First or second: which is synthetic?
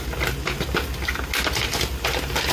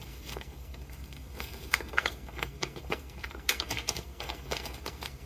second